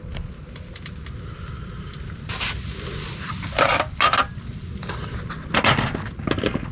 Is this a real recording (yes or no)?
yes